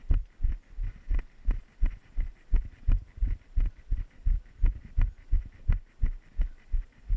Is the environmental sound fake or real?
real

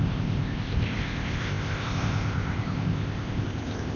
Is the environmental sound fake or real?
fake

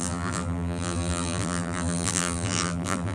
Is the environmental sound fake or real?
fake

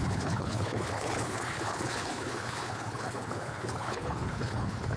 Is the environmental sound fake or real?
fake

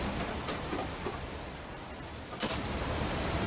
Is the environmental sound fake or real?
fake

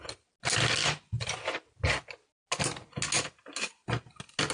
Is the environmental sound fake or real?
real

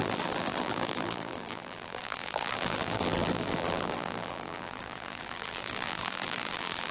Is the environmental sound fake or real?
fake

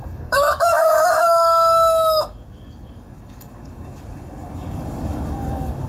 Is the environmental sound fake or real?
fake